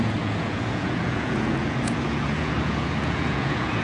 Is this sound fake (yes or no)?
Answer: yes